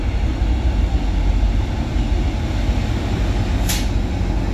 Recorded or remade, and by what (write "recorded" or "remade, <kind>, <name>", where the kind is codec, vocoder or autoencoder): recorded